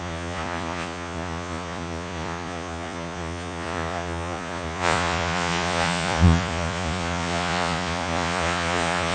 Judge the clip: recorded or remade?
remade